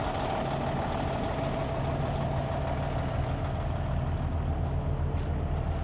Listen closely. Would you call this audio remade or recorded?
recorded